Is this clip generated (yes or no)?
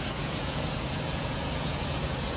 yes